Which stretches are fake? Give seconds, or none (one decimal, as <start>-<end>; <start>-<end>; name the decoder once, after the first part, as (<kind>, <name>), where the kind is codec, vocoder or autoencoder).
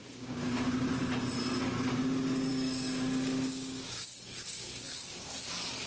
0.0-0.9 (codec, DAC); 2.5-5.3